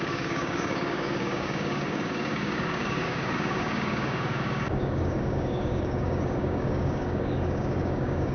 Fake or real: fake